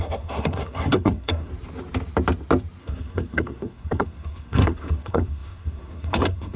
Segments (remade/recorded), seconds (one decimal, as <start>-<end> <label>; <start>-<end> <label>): 0.0-1.5 remade; 1.5-2.8 recorded; 2.8-6.6 remade